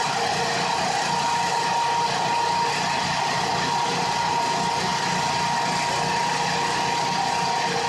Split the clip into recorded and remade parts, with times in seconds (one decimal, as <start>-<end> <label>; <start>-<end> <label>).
0.0-7.9 recorded